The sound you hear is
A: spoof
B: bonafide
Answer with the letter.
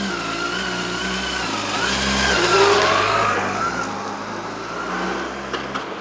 B